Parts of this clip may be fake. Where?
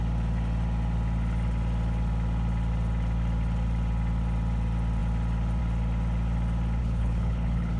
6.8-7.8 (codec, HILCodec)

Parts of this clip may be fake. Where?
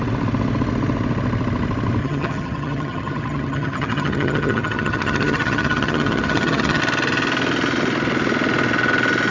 2.0-6.8 (vocoder, HiFi-GAN)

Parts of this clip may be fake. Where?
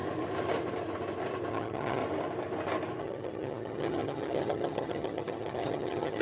1.5-2.0 (vocoder, HiFi-GAN); 3.0-6.2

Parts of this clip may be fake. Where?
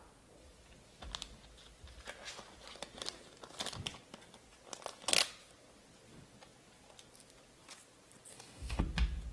8.3-8.8 (codec, DAC)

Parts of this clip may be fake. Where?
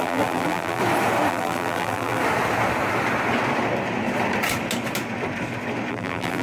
0.0-0.8 (vocoder, BigVGAN v2); 1.3-2.2; 5.9-6.4